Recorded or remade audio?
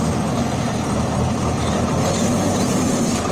recorded